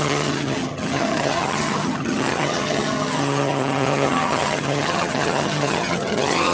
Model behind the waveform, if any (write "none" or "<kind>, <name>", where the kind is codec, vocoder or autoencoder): vocoder, HiFi-GAN